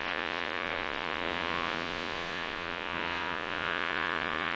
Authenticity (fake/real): fake